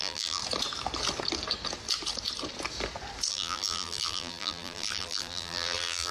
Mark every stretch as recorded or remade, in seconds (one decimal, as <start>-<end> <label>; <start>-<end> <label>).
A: 0.0-0.4 remade; 0.4-3.3 recorded; 3.3-6.1 remade